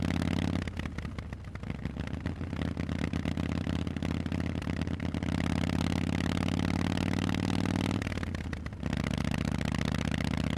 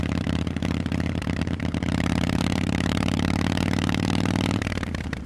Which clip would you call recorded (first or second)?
first